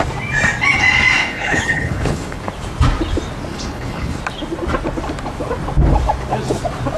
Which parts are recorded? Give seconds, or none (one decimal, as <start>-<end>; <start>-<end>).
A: 0.0-1.2; 2.4-3.5; 4.2-7.0